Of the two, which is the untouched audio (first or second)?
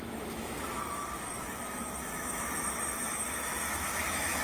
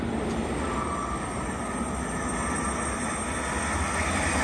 second